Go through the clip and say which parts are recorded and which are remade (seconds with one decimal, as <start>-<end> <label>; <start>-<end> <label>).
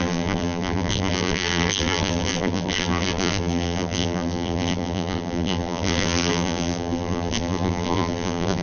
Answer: 0.0-8.6 remade